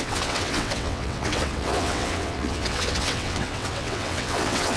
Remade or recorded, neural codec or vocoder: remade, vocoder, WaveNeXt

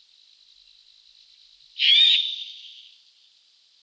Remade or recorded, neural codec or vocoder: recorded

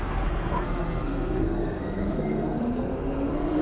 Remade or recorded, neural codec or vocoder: remade, codec, SNAC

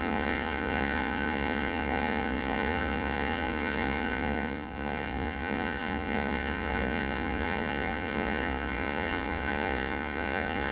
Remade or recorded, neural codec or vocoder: remade, vocoder, Vocos